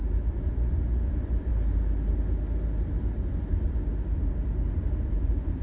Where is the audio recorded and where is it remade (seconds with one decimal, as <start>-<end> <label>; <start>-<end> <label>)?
0.0-1.1 recorded; 1.1-1.5 remade; 1.5-4.9 recorded; 4.9-5.6 remade